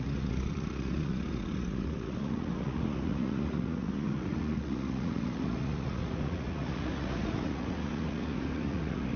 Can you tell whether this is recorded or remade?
remade